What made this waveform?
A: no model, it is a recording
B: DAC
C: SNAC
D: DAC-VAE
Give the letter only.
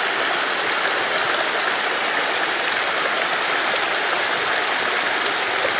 A